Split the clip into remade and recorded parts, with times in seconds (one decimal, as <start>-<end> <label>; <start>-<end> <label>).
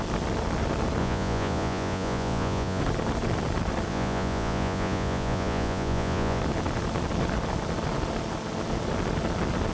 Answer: 0.0-1.0 recorded; 1.0-2.8 remade; 2.8-3.9 recorded; 3.9-6.4 remade; 6.4-9.7 recorded